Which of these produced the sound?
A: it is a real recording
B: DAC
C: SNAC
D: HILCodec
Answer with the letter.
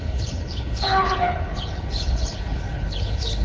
D